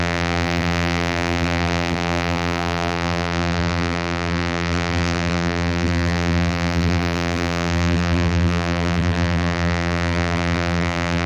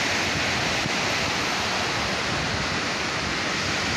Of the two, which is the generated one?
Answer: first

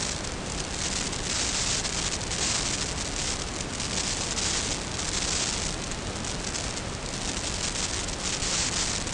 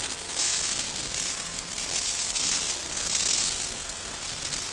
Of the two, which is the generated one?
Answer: second